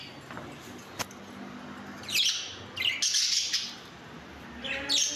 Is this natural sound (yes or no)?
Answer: yes